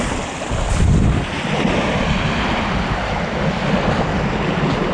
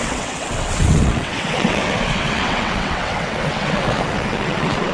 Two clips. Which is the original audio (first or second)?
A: first